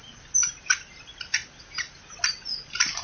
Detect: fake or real real